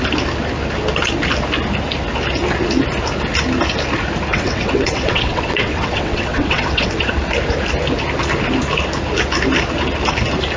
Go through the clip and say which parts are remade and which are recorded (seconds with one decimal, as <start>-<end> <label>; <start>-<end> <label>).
0.0-4.3 recorded; 4.3-7.1 remade; 7.1-10.6 recorded